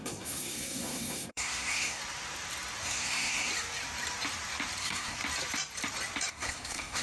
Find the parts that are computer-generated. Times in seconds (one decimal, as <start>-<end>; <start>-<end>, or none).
0.0-2.0; 2.8-3.5; 4.8-5.2; 6.3-7.0

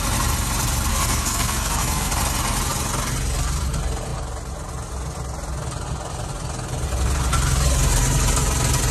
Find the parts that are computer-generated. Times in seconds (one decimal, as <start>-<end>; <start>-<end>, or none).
0.9-2.1

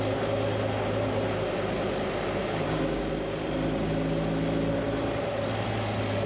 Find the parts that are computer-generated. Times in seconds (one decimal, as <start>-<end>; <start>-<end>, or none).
2.4-3.0

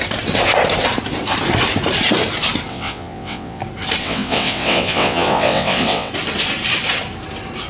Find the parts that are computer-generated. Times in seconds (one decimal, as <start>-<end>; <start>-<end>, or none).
2.7-3.6; 4.0-6.1